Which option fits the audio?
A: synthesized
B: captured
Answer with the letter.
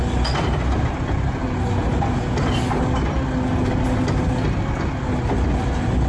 B